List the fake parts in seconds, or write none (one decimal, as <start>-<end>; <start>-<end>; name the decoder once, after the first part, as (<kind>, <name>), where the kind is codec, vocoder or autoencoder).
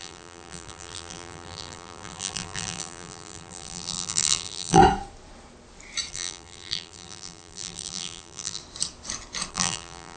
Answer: 0.0-4.8 (vocoder, BigVGAN v2); 6.1-8.6; 9.5-10.2